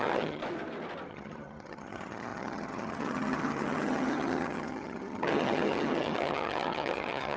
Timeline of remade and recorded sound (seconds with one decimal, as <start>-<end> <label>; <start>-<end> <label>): 0.0-0.4 remade; 0.4-1.1 recorded; 1.1-7.4 remade